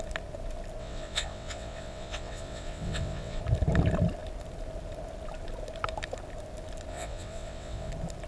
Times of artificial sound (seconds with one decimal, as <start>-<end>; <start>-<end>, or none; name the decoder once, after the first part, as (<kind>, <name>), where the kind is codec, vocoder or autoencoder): 0.8-3.4 (vocoder, WaveNeXt); 6.9-7.9

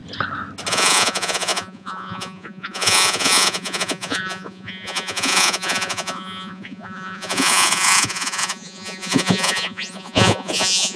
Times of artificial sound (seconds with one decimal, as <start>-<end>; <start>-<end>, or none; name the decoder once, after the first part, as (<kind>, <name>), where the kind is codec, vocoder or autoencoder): 0.7-11.0 (vocoder, Vocos)

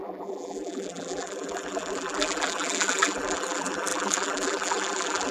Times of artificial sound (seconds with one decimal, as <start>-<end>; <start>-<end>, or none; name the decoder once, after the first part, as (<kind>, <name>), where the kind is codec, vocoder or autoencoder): 0.0-5.3 (vocoder, BigVGAN v2)

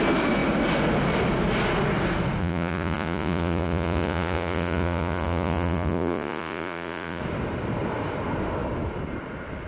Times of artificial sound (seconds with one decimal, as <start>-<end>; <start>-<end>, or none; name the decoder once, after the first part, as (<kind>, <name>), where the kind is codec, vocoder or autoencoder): 2.4-7.2 (vocoder, Vocos)

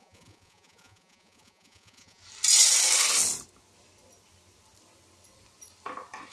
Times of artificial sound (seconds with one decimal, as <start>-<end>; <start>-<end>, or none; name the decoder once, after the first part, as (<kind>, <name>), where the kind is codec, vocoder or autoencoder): 0.0-2.2 (vocoder, Vocos)

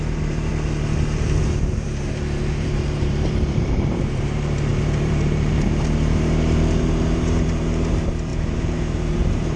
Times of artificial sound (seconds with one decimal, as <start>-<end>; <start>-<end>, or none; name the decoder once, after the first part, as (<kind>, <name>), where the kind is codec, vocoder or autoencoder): 0.0-0.5 (vocoder, BigVGAN v2); 1.4-9.6

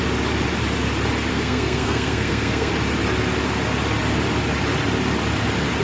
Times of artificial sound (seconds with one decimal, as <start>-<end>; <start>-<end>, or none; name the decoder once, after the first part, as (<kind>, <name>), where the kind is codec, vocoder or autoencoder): 1.3-2.7 (codec, SNAC)